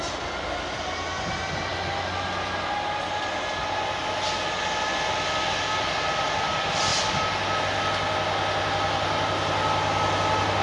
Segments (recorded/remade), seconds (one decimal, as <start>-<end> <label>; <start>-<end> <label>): 0.0-10.6 recorded